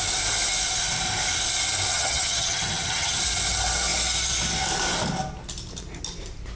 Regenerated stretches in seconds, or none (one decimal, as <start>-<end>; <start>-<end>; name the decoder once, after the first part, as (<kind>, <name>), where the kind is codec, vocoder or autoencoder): 1.9-3.2 (vocoder, HiFi-GAN)